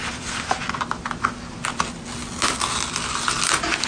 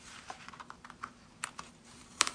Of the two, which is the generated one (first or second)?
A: second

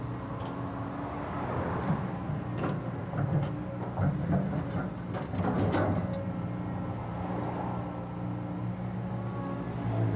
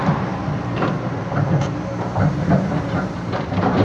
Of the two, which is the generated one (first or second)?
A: second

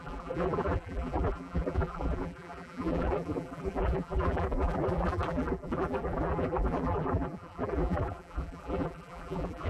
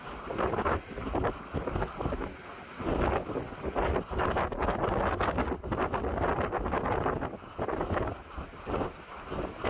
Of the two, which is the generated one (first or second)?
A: first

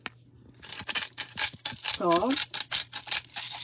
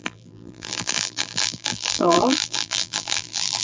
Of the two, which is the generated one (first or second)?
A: second